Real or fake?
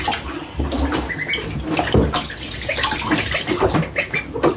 real